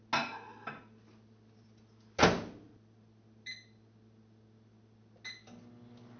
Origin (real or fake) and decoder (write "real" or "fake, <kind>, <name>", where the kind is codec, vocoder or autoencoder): real